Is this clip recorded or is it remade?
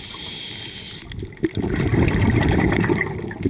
recorded